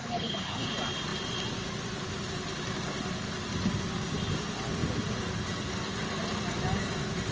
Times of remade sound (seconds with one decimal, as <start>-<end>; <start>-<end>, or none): 0.0-0.7